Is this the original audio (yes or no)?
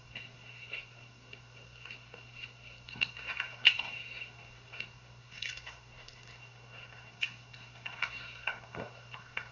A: no